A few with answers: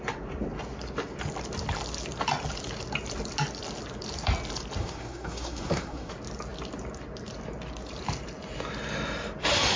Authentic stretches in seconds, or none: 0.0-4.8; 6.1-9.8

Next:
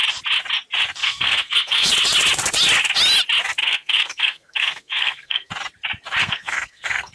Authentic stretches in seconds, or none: 0.0-1.0; 1.9-3.6; 5.5-6.2

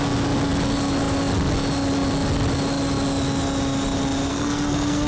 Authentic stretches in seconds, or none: 0.0-4.3